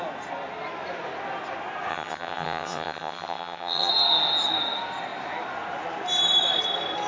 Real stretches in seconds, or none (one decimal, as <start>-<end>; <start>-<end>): 0.0-1.9; 3.9-7.1